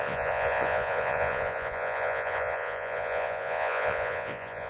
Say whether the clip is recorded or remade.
remade